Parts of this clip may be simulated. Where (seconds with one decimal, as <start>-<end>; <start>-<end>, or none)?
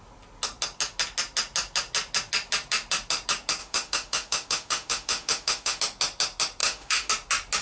3.6-5.8; 6.6-7.1